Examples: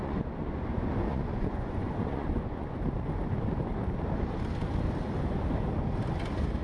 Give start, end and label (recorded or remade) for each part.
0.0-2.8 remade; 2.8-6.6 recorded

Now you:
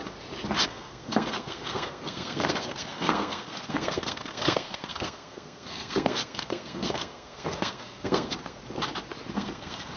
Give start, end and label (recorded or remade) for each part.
0.0-0.6 recorded; 0.6-8.6 remade; 8.6-9.3 recorded; 9.3-10.0 remade

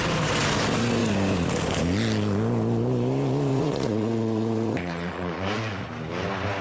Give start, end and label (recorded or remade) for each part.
0.0-3.5 recorded; 3.5-5.9 remade; 5.9-6.6 recorded